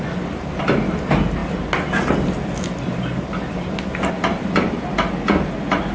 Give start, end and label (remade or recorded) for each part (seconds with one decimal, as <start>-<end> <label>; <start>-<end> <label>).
0.0-5.9 recorded